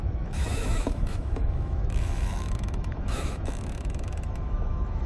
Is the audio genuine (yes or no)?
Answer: no